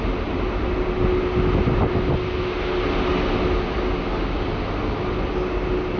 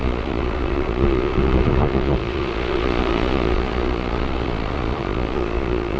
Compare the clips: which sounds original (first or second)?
first